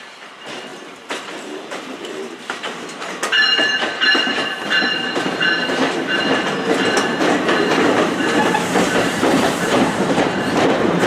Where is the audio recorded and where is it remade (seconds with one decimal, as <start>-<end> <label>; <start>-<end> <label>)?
0.0-11.1 remade